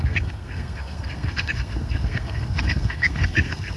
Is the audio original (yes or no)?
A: no